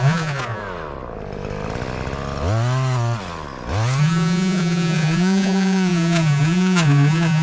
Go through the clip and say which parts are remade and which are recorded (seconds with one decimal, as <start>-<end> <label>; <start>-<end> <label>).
0.0-0.6 remade; 0.6-4.0 recorded; 4.0-7.4 remade